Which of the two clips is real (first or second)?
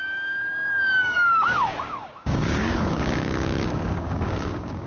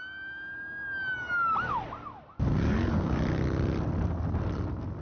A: second